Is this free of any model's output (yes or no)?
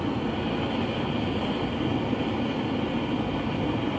yes